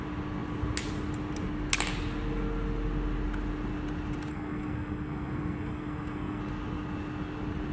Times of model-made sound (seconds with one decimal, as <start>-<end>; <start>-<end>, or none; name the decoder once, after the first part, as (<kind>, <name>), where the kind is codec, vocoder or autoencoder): 4.3-6.4 (codec, SNAC)